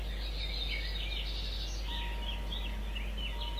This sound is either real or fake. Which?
real